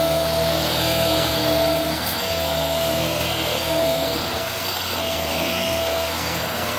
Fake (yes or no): yes